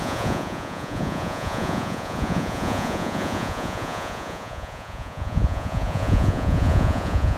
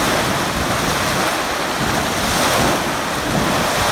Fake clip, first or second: first